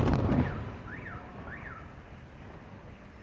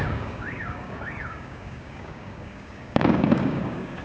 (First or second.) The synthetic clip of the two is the second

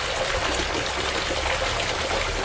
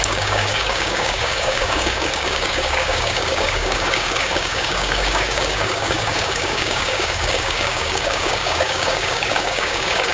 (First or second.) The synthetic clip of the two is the second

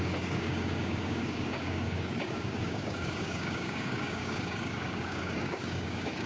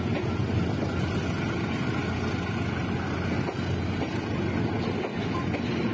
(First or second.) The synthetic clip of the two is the first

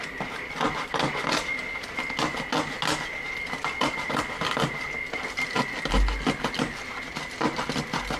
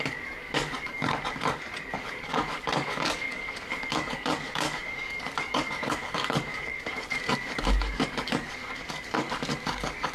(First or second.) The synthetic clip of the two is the second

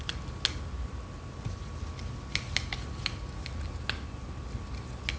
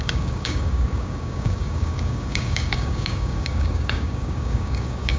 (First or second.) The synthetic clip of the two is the second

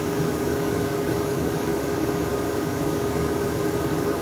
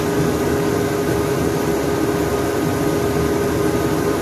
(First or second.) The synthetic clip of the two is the first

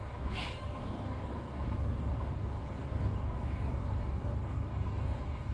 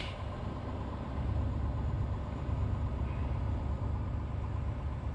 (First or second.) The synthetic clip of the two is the first